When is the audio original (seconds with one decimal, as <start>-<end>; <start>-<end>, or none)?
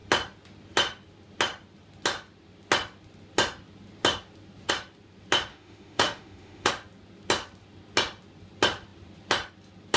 0.0-5.5; 6.7-10.0